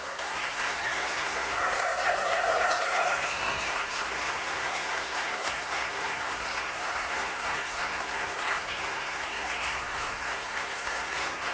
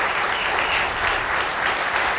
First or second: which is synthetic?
first